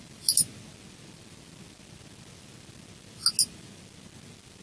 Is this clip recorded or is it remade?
recorded